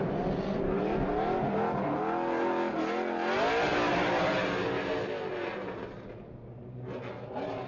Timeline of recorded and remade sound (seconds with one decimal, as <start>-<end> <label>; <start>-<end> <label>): 0.0-7.7 recorded